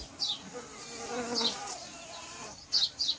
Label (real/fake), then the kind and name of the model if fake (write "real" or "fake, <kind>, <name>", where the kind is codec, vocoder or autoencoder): real